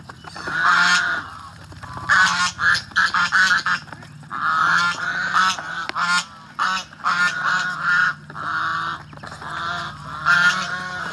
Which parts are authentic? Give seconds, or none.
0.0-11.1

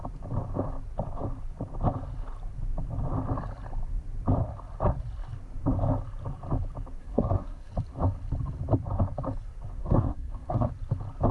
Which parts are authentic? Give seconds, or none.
0.0-7.0; 7.7-9.8; 10.7-11.3

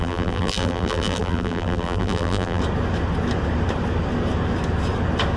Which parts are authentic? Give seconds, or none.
2.6-5.4

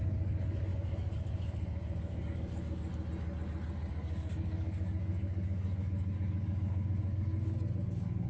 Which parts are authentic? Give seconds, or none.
2.9-3.9; 7.3-7.8

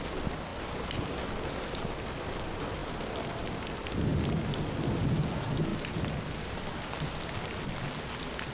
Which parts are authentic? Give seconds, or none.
0.0-8.5

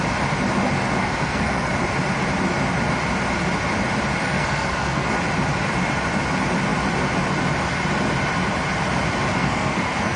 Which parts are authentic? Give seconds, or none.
0.0-1.0; 1.7-4.2; 5.1-9.3

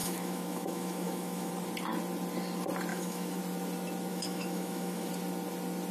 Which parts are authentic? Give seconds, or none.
1.5-2.9; 3.4-4.1; 5.1-5.9

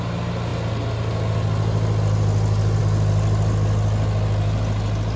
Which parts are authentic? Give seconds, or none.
0.0-5.2